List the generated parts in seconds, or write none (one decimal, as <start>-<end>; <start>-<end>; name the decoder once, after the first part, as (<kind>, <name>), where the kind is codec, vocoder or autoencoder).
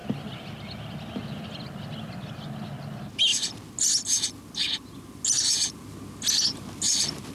none